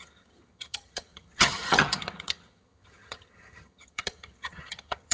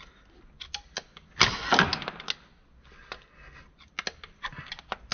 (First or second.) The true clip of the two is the second